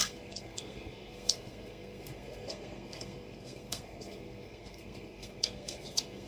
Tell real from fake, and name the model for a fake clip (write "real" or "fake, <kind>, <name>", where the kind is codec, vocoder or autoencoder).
fake, codec, SNAC